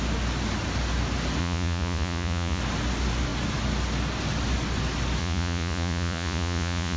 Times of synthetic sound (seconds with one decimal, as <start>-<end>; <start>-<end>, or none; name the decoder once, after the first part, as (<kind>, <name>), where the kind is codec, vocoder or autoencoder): 1.4-2.6 (vocoder, Vocos); 5.2-7.0